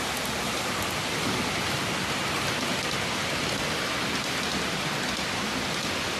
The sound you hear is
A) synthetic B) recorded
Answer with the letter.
B